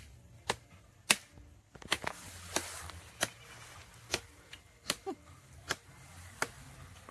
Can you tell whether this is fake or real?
real